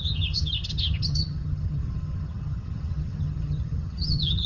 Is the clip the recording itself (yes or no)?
no